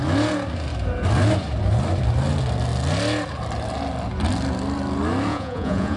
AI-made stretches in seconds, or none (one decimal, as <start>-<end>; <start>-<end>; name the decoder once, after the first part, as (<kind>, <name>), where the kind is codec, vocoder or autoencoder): 5.3-6.0 (vocoder, Vocos)